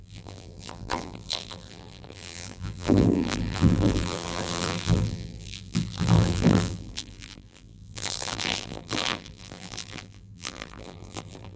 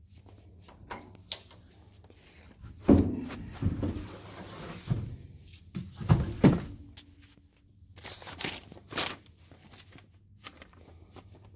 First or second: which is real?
second